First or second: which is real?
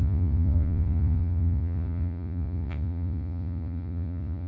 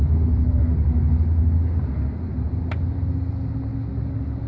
second